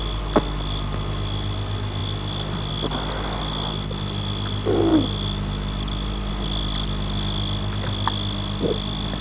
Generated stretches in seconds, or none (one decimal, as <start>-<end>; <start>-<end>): none